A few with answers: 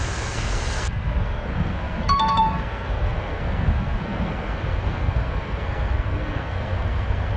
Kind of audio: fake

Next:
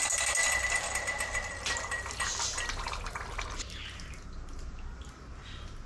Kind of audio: real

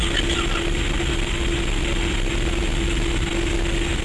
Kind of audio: real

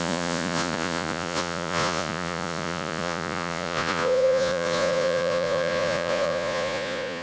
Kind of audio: fake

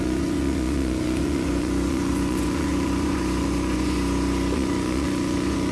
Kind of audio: fake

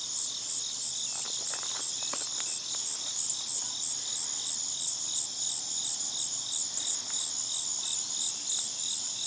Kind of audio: real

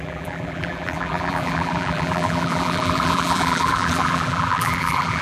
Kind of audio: fake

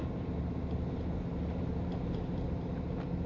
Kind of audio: real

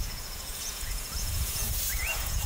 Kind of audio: fake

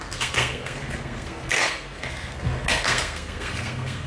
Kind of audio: fake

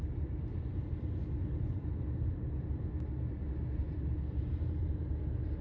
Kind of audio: real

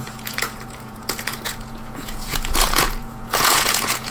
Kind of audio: fake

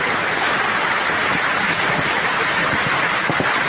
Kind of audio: fake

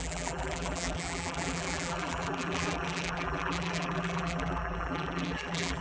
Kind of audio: fake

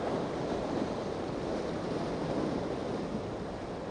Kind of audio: real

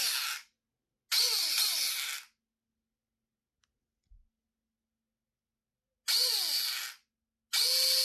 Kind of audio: real